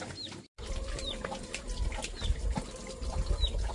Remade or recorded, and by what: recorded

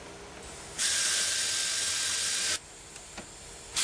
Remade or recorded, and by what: recorded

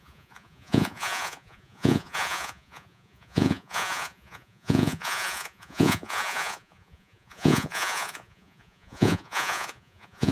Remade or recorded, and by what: remade, vocoder, Vocos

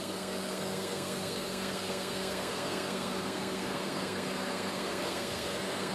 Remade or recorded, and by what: remade, codec, SNAC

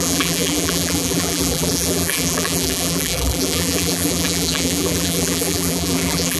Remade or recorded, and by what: remade, vocoder, BigVGAN v2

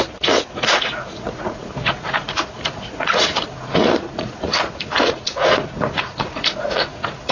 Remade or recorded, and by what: remade, vocoder, Vocos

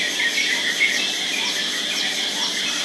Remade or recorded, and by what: recorded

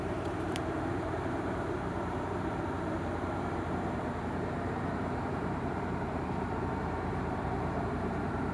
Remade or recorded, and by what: remade, vocoder, BigVGAN v2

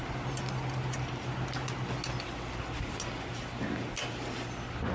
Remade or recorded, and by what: recorded